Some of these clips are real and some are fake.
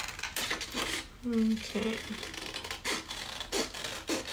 real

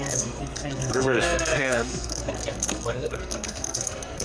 fake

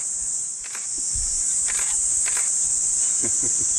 real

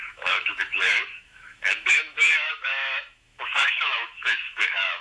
fake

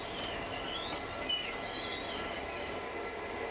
real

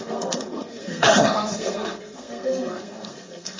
fake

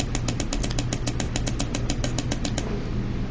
real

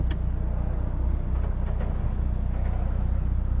real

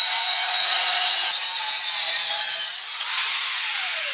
fake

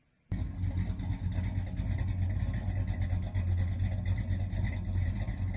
real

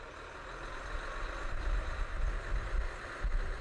real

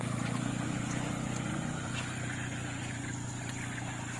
fake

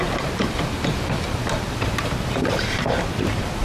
fake